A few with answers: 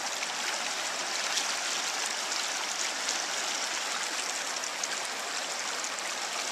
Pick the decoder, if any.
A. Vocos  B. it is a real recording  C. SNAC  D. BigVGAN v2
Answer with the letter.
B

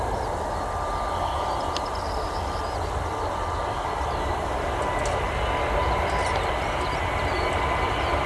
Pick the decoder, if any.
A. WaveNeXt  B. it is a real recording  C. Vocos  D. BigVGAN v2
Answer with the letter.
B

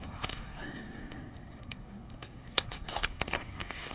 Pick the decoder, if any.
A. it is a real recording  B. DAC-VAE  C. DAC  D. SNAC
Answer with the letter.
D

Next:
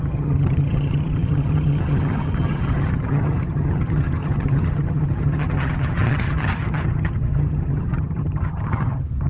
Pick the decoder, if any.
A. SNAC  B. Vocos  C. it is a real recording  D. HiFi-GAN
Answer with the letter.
D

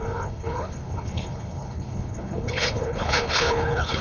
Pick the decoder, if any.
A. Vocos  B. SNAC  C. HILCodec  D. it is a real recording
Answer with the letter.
C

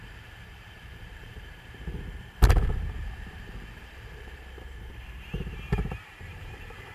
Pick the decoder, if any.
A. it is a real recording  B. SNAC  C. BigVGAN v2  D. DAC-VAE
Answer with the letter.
C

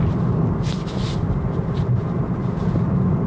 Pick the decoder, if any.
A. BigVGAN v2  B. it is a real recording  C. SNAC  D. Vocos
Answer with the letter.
B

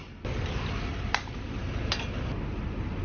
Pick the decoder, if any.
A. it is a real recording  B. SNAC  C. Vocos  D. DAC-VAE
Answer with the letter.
A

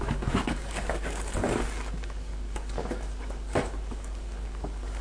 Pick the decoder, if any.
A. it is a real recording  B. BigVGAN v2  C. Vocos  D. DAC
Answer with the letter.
D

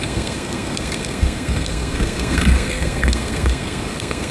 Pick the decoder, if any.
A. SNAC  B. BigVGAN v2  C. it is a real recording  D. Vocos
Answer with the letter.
A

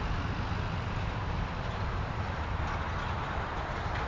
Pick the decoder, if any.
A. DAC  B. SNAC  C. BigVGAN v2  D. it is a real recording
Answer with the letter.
D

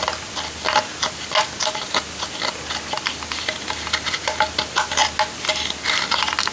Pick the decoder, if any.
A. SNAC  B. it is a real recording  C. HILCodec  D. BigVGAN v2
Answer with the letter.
B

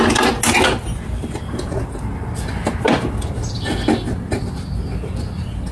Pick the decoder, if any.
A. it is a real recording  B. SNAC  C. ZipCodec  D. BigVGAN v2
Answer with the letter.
A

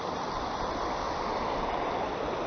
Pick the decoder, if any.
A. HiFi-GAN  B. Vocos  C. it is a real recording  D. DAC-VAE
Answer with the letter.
C